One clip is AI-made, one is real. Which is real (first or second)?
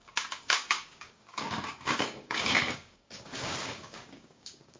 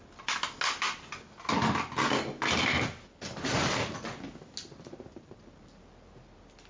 second